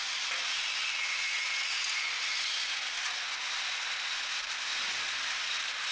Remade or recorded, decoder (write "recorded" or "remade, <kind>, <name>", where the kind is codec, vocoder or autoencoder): recorded